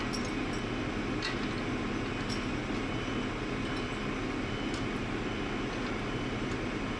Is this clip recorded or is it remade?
recorded